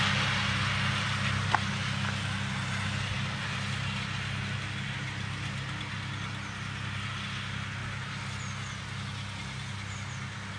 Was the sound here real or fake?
real